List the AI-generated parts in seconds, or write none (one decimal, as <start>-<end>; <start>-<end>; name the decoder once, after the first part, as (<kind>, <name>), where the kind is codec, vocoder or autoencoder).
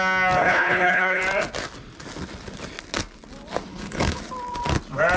0.4-1.2 (codec, HILCodec); 3.7-4.2